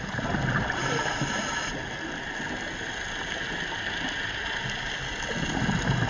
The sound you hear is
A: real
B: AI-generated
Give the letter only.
A